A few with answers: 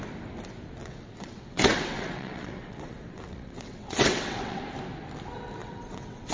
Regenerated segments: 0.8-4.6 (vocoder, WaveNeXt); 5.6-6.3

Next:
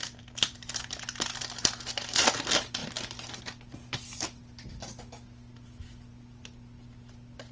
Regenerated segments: none

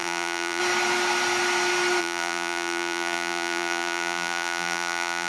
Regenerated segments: 0.0-0.6 (vocoder, BigVGAN v2); 2.0-5.3